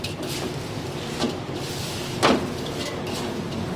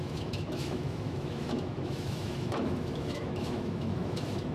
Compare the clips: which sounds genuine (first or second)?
first